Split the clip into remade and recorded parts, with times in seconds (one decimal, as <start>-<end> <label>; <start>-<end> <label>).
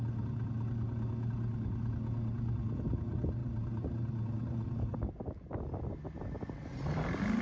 0.0-3.4 recorded; 3.4-5.1 remade; 5.1-7.4 recorded